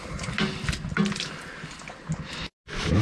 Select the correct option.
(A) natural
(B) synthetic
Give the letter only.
A